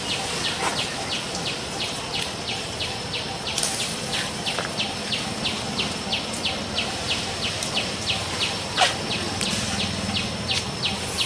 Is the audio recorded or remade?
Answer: recorded